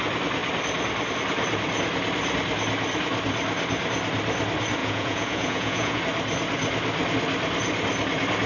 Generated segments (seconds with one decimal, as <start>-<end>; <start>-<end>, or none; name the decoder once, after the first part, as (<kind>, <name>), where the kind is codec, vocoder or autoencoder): 4.8-6.0 (vocoder, Vocos)